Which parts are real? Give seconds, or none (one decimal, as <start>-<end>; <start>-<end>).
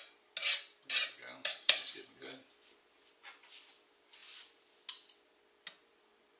0.0-1.5; 2.3-6.4